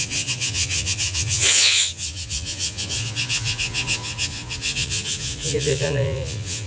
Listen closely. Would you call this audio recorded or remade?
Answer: remade